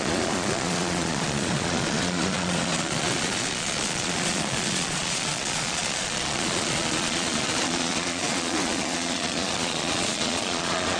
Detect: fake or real fake